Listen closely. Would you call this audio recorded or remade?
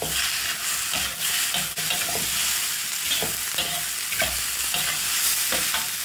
recorded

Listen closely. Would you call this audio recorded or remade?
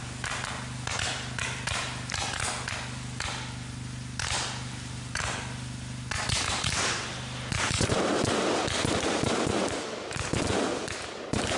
recorded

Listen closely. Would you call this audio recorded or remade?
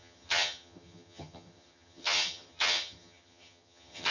remade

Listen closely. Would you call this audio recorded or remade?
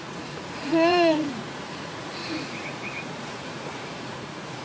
remade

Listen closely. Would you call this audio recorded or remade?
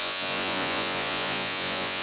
remade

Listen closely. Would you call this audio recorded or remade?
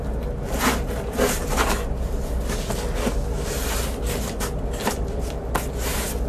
recorded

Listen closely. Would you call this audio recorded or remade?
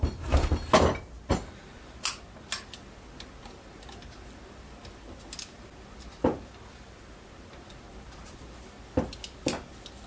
recorded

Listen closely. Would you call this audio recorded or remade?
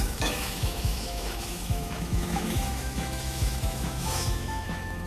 remade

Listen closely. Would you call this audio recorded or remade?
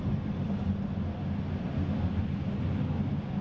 recorded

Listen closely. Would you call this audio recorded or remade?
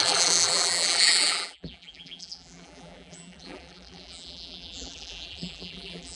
remade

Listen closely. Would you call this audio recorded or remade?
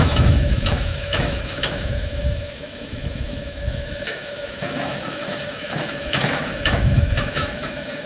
remade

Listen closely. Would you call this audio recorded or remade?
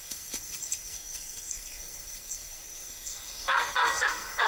remade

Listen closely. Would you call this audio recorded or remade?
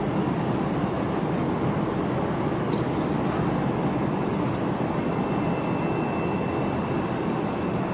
recorded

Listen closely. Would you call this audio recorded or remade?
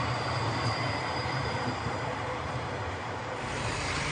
remade